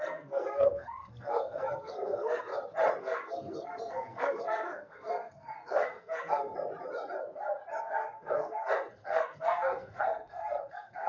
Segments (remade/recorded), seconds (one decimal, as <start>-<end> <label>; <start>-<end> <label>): 0.0-2.5 remade; 2.5-3.0 recorded; 3.0-6.5 remade; 6.5-7.8 recorded; 7.8-11.1 remade